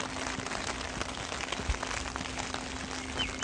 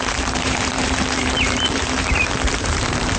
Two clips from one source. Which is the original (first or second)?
first